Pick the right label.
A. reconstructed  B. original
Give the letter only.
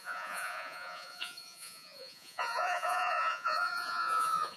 A